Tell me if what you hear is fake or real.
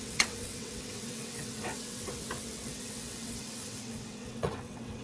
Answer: fake